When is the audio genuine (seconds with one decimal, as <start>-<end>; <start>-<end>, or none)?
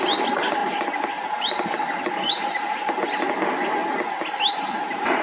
0.0-0.6; 1.2-5.2